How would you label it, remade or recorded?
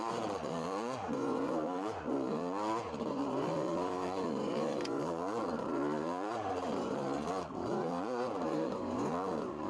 remade